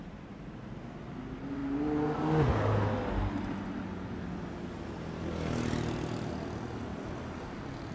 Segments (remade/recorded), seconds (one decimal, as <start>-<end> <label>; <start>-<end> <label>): 0.0-0.6 remade; 0.6-6.9 recorded; 6.9-7.9 remade